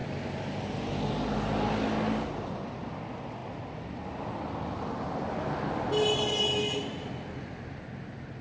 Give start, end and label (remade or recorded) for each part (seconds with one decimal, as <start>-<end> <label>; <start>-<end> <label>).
0.0-8.4 recorded

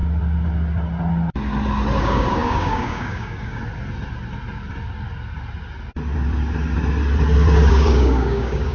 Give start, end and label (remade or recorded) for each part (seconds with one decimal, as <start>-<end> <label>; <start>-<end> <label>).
0.0-2.0 recorded; 2.0-3.6 remade; 3.6-7.7 recorded; 7.7-8.7 remade

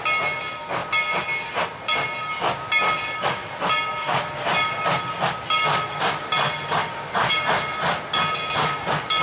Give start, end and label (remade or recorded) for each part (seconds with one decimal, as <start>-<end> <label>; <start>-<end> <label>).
0.0-9.2 recorded

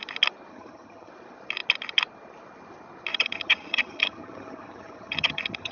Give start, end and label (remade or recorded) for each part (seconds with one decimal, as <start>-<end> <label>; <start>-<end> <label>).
0.0-0.5 recorded; 0.5-1.1 remade; 1.1-3.1 recorded; 3.1-5.7 remade